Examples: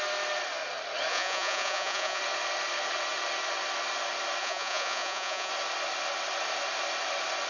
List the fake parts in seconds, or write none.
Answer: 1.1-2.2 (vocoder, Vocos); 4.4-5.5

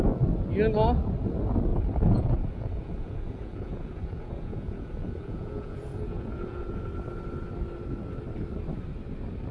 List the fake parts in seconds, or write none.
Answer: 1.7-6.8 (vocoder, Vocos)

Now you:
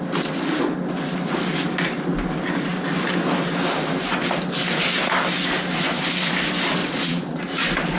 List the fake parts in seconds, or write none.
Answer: 6.8-7.4 (vocoder, Vocos)

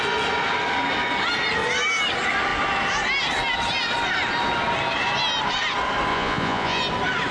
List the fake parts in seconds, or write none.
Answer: 6.1-6.8 (vocoder, Vocos)